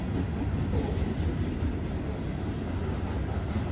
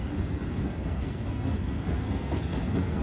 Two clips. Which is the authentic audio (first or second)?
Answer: first